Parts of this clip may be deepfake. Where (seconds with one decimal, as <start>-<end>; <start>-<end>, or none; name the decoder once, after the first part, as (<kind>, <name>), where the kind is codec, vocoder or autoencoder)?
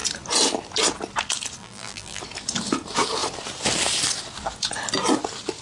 1.6-2.2 (vocoder, BigVGAN v2)